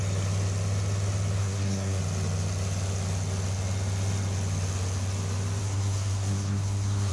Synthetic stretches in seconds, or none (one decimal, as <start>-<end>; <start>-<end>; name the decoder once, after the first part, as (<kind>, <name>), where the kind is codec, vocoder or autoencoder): 1.4-2.0 (codec, SNAC); 5.6-7.1